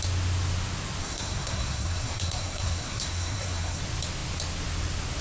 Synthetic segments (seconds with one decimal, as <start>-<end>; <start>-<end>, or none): 1.0-3.8